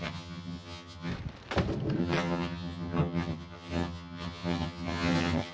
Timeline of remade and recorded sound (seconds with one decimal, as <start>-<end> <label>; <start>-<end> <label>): 0.0-1.1 remade; 1.1-2.0 recorded; 2.0-5.5 remade